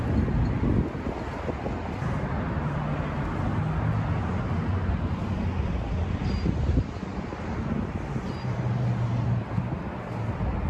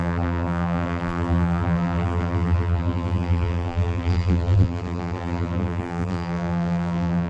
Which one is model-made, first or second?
second